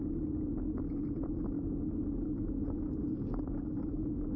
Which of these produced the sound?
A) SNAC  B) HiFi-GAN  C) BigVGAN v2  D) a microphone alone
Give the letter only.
D